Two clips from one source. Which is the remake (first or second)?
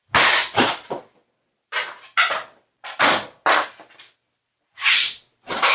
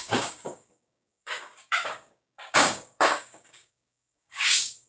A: second